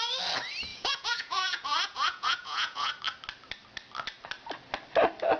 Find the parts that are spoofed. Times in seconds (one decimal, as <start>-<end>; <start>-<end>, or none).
0.7-2.9